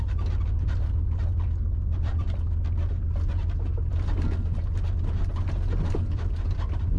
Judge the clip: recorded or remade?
recorded